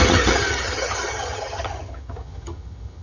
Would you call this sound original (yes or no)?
no